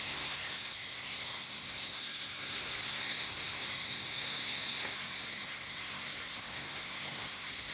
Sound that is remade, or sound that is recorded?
remade